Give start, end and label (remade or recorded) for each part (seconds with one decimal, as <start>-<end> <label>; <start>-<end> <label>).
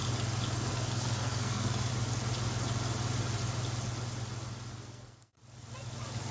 0.0-0.7 recorded; 0.7-1.9 remade; 1.9-4.7 recorded; 4.7-5.4 remade; 5.4-6.3 recorded